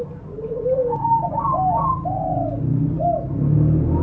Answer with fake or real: real